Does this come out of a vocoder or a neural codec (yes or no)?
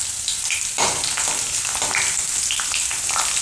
no